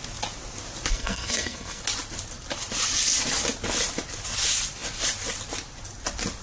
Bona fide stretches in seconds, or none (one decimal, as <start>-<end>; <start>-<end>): 0.0-0.9; 1.8-6.4